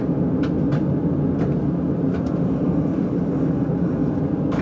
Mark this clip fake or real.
real